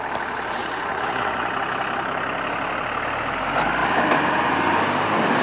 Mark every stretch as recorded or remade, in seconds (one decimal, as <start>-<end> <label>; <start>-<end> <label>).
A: 0.0-0.6 recorded; 0.6-1.5 remade; 1.5-5.4 recorded